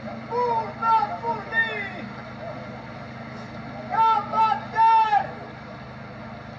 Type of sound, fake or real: real